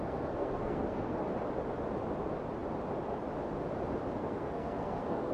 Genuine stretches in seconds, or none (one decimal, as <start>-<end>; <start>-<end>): 1.2-4.2